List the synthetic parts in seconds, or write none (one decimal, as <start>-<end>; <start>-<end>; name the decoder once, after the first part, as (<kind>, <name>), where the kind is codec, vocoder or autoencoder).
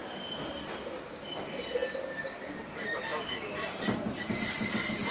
none